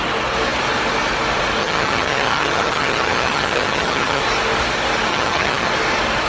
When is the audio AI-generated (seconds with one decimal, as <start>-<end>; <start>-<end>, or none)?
1.6-4.2; 5.1-5.7